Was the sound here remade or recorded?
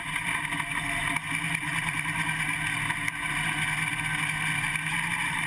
recorded